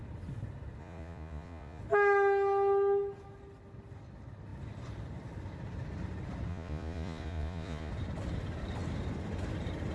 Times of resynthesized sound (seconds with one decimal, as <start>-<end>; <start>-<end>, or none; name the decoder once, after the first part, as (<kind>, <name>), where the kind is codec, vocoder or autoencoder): 0.8-1.8 (vocoder, Vocos); 6.5-7.9